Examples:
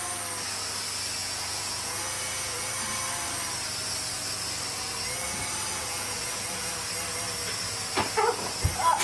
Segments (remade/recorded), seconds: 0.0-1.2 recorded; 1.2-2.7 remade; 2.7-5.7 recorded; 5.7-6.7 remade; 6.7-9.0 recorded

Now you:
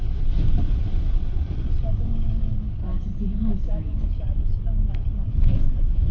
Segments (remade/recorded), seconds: 0.0-5.1 recorded; 5.1-6.1 remade